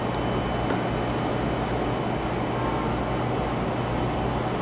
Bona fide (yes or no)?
yes